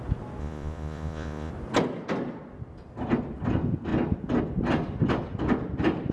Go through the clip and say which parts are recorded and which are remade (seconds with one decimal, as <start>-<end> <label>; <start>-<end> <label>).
0.0-0.4 recorded; 0.4-1.5 remade; 1.5-6.1 recorded

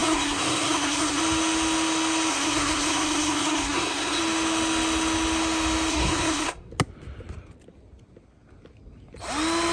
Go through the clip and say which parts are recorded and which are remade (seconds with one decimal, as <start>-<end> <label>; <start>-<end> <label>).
0.0-1.2 remade; 1.2-2.3 recorded; 2.3-4.2 remade; 4.2-5.9 recorded; 5.9-6.7 remade; 6.7-9.7 recorded

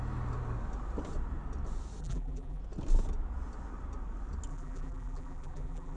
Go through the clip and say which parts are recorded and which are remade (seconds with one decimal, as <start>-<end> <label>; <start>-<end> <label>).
0.0-2.0 recorded; 2.0-2.6 remade; 2.6-4.5 recorded; 4.5-6.0 remade

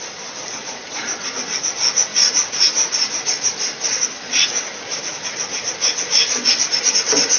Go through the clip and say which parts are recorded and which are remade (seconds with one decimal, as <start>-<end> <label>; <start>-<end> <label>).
0.0-0.6 recorded; 0.6-1.2 remade; 1.2-7.4 recorded

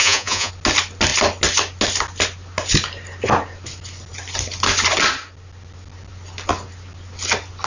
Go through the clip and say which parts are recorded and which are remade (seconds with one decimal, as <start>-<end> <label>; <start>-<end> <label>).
0.0-0.5 remade; 0.5-7.7 recorded

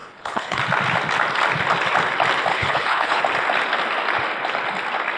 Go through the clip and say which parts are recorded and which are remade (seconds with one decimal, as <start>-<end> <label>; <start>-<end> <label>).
0.0-0.6 remade; 0.6-2.5 recorded; 2.5-3.2 remade; 3.2-5.2 recorded

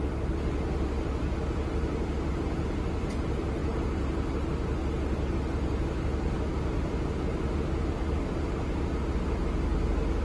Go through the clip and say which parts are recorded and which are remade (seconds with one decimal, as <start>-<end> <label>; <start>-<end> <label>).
0.0-10.2 recorded

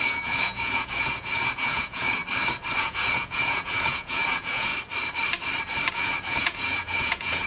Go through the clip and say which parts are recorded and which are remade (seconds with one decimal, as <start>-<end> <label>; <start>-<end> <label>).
0.0-2.2 remade; 2.2-2.8 recorded; 2.8-4.7 remade; 4.7-5.9 recorded; 5.9-7.5 remade